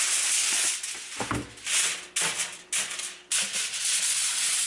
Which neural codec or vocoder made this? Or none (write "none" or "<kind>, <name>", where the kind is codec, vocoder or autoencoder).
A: none